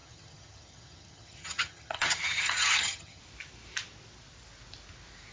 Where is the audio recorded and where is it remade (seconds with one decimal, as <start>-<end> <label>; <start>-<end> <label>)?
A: 0.0-3.2 remade; 3.2-5.3 recorded